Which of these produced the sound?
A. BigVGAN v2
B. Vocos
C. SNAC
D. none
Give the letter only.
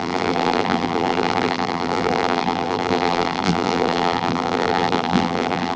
A